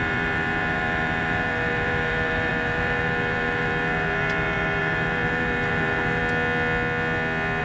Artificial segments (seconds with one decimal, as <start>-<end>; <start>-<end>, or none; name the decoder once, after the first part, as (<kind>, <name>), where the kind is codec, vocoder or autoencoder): 0.0-6.2 (vocoder, BigVGAN v2)